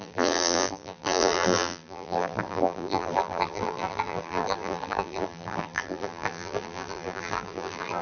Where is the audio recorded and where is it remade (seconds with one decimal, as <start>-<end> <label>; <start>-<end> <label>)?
0.0-8.0 remade